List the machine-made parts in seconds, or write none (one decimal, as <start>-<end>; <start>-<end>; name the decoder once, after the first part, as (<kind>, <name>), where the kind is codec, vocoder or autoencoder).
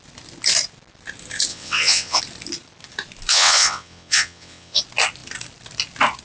1.5-2.2 (vocoder, WaveNeXt); 3.3-4.8